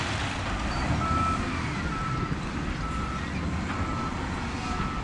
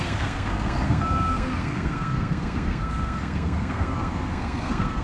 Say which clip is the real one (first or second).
first